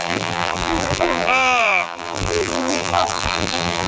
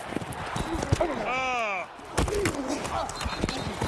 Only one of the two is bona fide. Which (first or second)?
second